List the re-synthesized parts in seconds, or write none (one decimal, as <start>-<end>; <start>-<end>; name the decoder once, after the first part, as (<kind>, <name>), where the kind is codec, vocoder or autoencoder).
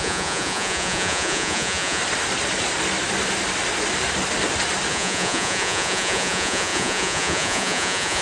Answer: 0.0-2.0 (vocoder, Vocos); 4.9-8.2